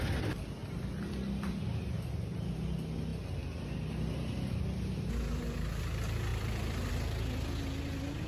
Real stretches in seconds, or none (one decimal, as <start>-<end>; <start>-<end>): 0.0-0.6; 1.5-6.3; 6.9-8.3